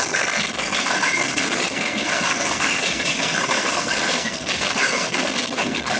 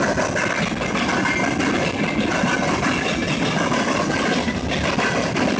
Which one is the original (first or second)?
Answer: second